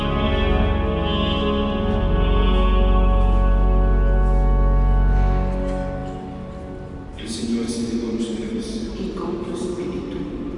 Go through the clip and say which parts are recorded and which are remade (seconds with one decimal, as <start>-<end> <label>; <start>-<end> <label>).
0.0-10.6 recorded